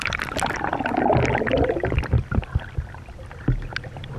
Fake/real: real